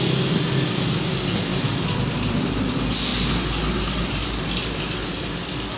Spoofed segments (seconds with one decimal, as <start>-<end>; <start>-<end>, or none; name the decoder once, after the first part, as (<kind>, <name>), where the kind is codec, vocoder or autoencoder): 1.5-2.7 (vocoder, BigVGAN v2)